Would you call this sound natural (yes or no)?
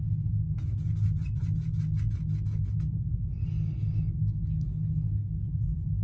yes